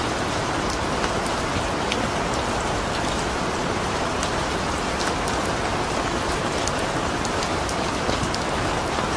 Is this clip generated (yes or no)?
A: no